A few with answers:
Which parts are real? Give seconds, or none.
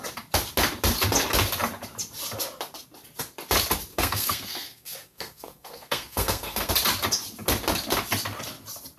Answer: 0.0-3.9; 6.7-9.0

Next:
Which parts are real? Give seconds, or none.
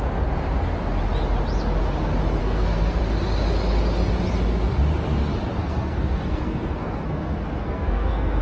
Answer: 0.0-2.4; 3.0-5.6